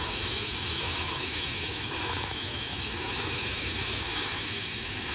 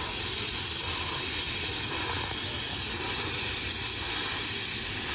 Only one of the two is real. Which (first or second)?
second